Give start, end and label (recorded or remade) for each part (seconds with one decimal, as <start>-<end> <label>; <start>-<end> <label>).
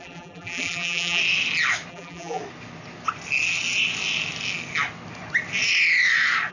0.0-1.2 remade; 1.2-1.9 recorded; 1.9-2.4 remade; 2.4-6.5 recorded